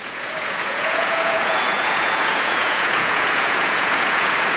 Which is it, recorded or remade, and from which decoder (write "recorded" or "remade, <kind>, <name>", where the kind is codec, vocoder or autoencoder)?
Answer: remade, vocoder, Vocos